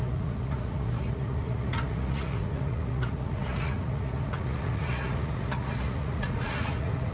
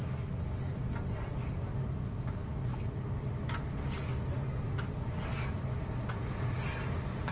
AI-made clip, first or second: first